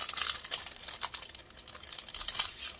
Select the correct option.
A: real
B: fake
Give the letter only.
A